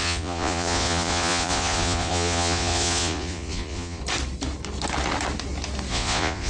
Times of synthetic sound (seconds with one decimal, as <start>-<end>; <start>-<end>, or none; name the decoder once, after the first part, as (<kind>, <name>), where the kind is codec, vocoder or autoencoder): 0.0-4.0 (vocoder, Vocos); 5.9-6.5